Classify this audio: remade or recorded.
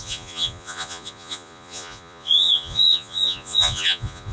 remade